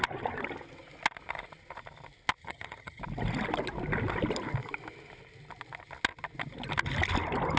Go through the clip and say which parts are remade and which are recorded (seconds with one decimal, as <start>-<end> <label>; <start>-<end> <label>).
0.0-2.4 recorded; 2.4-3.0 remade; 3.0-7.6 recorded